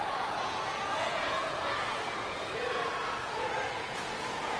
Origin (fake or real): fake